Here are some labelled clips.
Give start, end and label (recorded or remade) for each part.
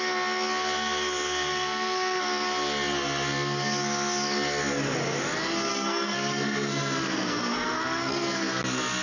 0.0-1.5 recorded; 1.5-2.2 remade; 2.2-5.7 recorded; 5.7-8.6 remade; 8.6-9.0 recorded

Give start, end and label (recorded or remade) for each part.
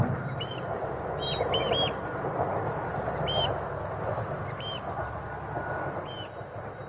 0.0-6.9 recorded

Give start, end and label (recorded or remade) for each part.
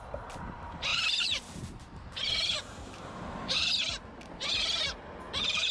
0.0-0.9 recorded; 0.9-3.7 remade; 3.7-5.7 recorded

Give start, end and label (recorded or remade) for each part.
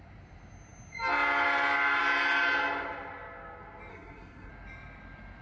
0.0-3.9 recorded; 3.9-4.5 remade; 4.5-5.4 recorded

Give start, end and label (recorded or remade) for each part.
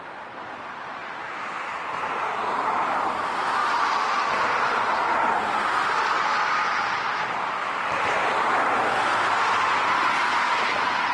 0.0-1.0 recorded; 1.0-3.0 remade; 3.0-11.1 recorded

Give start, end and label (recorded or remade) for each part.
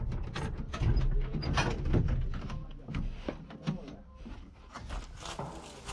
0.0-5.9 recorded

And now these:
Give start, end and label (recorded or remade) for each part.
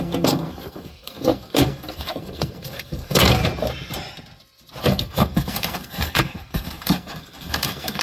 0.0-3.4 remade; 3.4-4.8 recorded; 4.8-8.0 remade